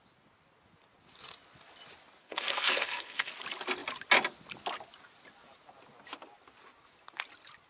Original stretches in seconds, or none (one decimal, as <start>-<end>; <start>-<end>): 0.0-2.2; 3.3-7.7

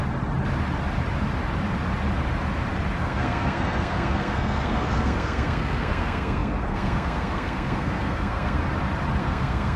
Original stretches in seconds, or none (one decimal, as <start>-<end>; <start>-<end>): 0.0-3.0; 8.6-9.2

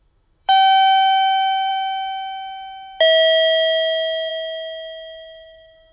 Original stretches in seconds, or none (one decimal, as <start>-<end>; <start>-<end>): 1.7-4.3

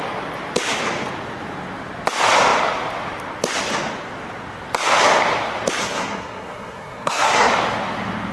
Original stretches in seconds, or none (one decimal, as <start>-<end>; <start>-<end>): 0.0-5.8; 7.5-8.3

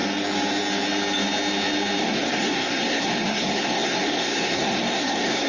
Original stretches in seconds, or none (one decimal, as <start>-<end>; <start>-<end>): 0.0-2.0

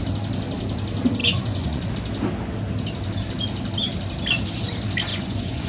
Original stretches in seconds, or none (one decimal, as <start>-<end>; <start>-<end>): 0.0-1.2; 1.9-5.1